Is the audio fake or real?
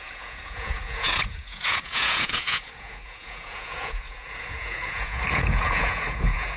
fake